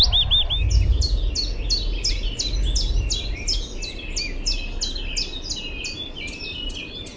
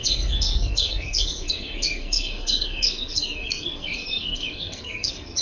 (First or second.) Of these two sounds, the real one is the first